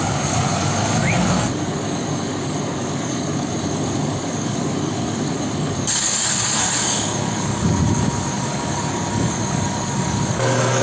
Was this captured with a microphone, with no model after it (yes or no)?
no